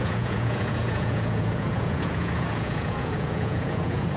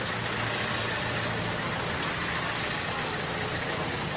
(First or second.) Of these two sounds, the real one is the second